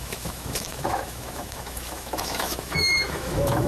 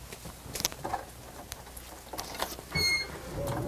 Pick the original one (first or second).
second